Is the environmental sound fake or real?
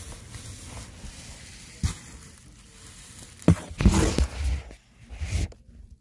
real